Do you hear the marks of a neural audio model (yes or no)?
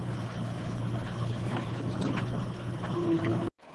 yes